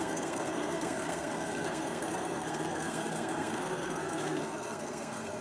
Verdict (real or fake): fake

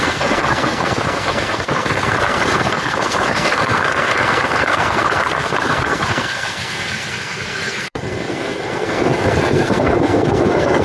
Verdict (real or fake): fake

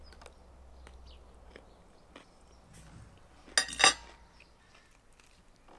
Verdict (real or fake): real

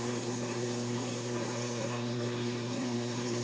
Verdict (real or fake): fake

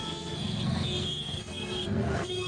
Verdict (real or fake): fake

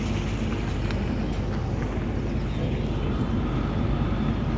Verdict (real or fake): real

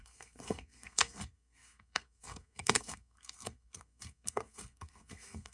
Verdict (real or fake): fake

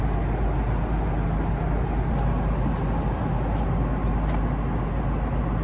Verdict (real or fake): real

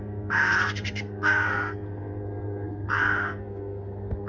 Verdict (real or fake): fake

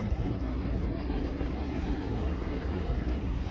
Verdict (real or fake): fake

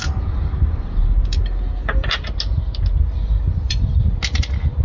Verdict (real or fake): real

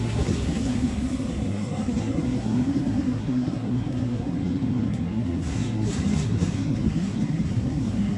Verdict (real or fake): fake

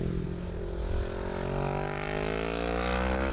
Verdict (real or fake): real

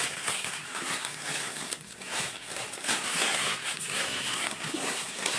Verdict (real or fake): fake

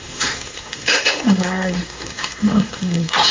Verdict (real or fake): fake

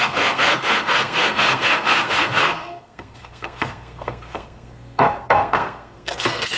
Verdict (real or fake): fake